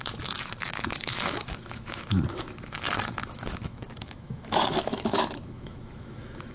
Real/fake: fake